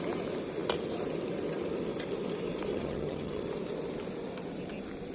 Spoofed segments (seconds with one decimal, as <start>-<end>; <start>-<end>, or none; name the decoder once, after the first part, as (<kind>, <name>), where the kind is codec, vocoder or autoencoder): 2.7-3.4 (vocoder, HiFi-GAN)